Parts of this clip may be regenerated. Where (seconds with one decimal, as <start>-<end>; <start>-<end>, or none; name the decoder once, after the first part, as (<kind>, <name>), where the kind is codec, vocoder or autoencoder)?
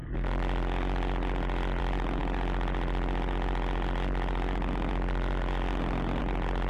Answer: none